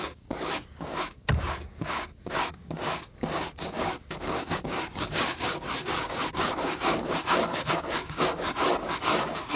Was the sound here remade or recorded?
remade